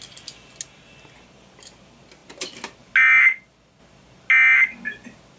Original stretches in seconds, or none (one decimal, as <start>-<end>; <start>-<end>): 0.0-5.4